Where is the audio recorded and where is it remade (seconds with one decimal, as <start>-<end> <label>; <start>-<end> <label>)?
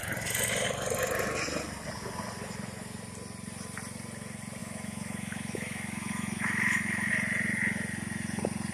0.0-4.6 recorded; 4.6-7.1 remade; 7.1-8.7 recorded